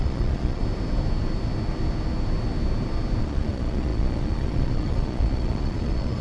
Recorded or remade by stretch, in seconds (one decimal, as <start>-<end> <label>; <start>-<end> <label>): 0.0-0.6 remade; 0.6-3.2 recorded; 3.2-6.2 remade